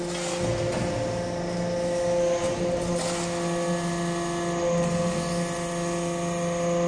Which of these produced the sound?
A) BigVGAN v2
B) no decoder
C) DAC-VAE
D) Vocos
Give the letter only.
B